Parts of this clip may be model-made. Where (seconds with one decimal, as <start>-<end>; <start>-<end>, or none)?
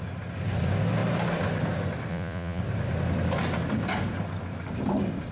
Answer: 2.1-2.6